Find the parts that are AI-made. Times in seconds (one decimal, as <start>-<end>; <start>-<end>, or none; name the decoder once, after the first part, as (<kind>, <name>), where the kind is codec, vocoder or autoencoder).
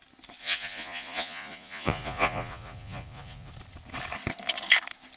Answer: 0.4-3.5 (vocoder, Vocos)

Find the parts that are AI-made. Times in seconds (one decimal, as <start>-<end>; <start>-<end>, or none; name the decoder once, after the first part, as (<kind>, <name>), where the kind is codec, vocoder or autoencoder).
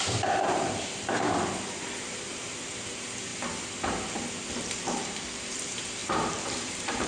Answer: 0.0-3.3 (vocoder, BigVGAN v2); 5.5-7.1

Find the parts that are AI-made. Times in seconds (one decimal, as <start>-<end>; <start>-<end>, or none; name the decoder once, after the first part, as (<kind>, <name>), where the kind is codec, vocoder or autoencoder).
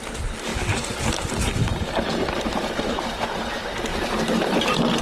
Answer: 3.9-4.5 (vocoder, BigVGAN v2)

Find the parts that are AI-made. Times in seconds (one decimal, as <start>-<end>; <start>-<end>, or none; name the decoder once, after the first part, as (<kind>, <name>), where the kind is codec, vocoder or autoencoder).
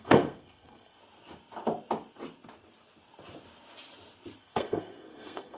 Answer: 0.0-1.0 (codec, SNAC); 4.4-5.6